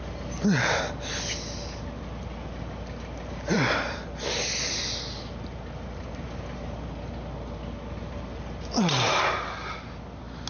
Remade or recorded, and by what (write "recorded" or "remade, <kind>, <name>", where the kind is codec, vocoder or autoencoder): recorded